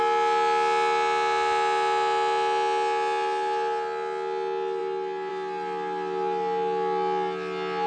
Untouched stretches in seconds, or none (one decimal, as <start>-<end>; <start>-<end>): 0.0-7.9